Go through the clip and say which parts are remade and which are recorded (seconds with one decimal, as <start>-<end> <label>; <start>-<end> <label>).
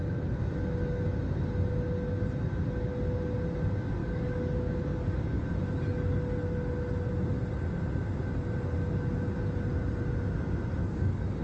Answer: 0.0-4.0 recorded; 4.0-5.4 remade; 5.4-10.8 recorded; 10.8-11.4 remade